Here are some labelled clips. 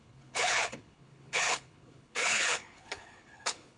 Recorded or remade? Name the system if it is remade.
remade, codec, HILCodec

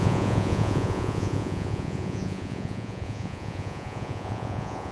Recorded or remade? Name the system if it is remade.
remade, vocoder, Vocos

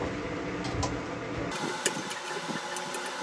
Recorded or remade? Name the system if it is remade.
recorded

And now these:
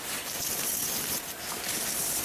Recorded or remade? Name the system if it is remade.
recorded